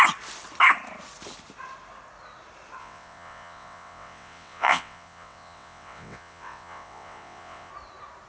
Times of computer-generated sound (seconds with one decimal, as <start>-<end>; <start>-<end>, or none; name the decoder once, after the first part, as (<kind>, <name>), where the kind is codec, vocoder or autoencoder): 2.8-7.7 (vocoder, WaveNeXt)